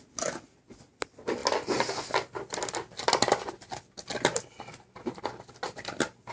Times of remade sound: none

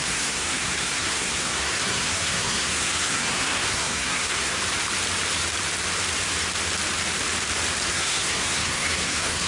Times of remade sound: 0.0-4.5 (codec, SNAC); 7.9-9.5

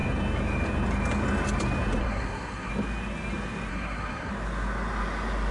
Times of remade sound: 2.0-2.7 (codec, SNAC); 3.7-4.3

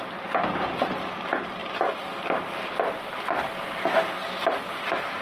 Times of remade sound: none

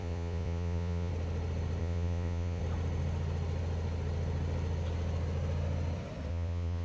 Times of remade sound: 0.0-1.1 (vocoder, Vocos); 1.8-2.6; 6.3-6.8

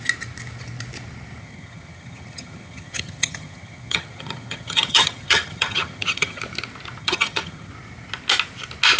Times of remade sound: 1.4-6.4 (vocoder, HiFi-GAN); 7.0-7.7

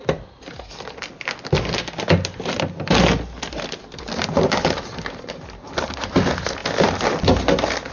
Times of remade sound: none